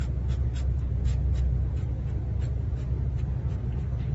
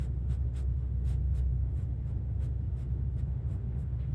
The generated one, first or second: second